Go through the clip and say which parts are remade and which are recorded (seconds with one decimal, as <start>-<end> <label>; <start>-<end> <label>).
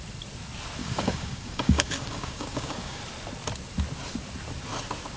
0.0-0.8 recorded; 0.8-3.0 remade; 3.0-5.2 recorded